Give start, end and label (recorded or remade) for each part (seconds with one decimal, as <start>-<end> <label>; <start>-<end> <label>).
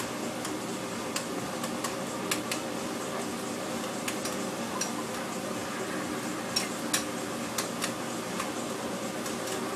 0.0-9.8 recorded